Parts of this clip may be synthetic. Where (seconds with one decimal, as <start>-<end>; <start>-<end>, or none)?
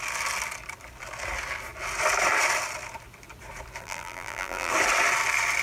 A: 3.8-4.7